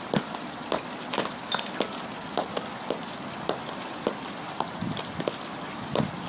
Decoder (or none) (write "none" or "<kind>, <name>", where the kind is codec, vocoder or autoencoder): none